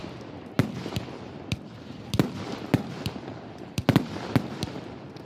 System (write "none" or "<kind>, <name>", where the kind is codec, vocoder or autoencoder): none